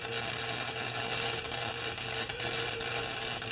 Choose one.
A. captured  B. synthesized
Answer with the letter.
A